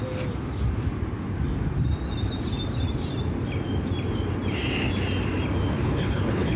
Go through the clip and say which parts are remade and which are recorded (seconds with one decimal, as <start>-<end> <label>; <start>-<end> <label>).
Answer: 0.0-5.8 recorded; 5.8-6.6 remade